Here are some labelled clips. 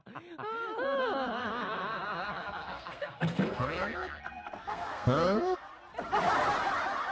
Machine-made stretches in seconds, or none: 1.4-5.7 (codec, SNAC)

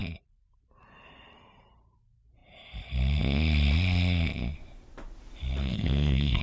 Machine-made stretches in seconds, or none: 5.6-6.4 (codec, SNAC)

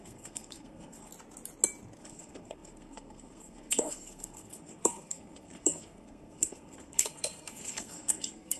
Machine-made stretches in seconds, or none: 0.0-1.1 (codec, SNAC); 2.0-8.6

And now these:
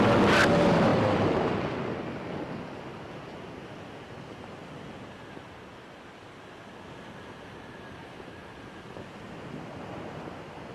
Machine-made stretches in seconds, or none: none